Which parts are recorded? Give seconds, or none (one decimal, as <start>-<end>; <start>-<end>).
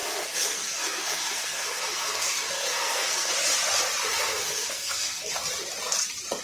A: 3.3-4.1; 5.3-6.4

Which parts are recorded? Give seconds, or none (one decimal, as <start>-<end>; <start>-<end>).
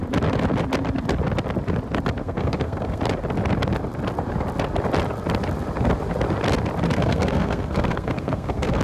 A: 0.0-2.2; 3.0-6.9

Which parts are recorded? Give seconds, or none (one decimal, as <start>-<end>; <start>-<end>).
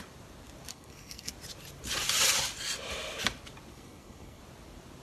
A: 0.0-0.7; 1.3-3.7; 4.4-5.0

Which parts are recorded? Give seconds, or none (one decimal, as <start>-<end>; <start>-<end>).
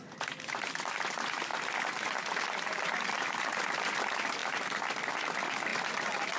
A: 0.0-6.4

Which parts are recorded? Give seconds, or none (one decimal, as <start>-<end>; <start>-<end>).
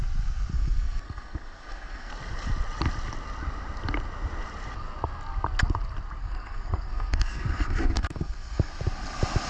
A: 0.0-0.5; 2.1-6.2; 8.7-9.5